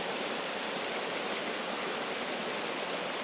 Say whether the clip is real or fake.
real